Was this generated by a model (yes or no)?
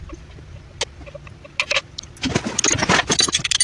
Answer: no